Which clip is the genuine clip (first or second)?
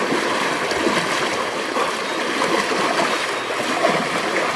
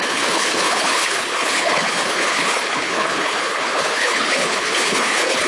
first